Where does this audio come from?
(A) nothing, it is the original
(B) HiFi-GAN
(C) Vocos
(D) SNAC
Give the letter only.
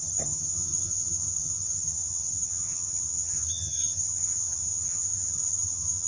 B